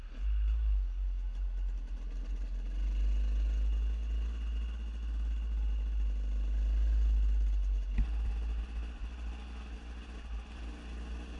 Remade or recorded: recorded